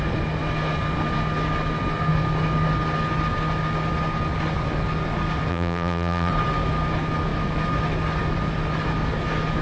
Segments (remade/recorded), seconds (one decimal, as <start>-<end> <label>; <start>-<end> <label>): 0.0-5.5 recorded; 5.5-6.3 remade; 6.3-9.6 recorded